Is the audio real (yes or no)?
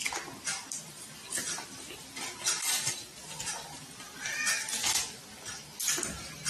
yes